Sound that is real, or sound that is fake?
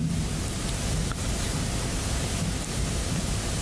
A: real